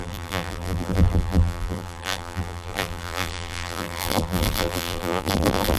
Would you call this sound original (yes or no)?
no